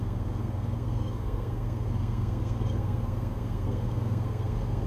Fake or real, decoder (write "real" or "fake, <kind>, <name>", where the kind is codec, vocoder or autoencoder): fake, codec, SNAC